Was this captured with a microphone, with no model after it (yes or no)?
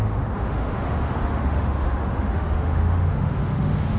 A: no